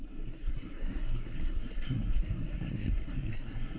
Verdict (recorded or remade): remade